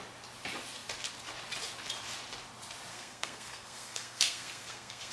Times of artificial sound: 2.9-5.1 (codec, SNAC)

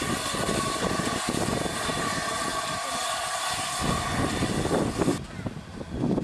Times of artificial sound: none